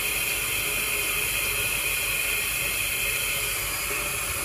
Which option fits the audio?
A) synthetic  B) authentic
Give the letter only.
B